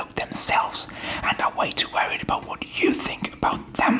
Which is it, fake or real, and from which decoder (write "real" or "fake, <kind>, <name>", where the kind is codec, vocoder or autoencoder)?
real